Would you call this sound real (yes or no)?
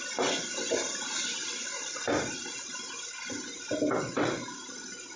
yes